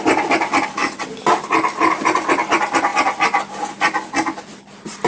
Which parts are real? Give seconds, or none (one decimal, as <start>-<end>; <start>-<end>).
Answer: 0.0-5.1